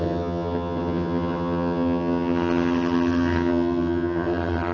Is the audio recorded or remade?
remade